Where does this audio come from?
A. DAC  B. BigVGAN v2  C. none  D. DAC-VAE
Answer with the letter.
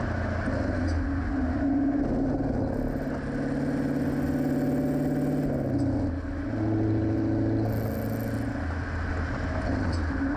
C